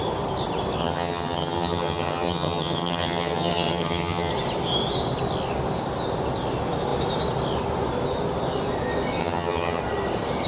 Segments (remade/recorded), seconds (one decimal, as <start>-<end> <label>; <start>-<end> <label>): 0.0-0.8 recorded; 0.8-4.3 remade; 4.3-9.2 recorded; 9.2-9.8 remade; 9.8-10.5 recorded